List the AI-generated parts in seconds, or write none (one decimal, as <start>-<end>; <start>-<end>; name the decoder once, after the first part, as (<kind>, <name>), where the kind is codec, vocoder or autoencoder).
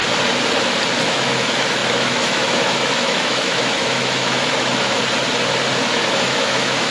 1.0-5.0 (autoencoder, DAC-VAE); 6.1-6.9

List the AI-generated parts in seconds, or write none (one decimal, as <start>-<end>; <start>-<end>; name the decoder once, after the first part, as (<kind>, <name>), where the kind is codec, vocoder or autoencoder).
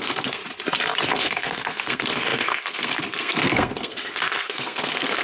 0.0-0.4 (codec, SNAC); 1.1-5.2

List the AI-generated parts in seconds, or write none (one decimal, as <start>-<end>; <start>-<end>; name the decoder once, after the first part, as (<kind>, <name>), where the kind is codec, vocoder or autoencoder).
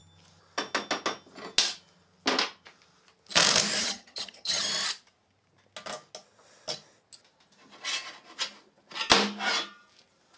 3.8-4.7 (vocoder, HiFi-GAN)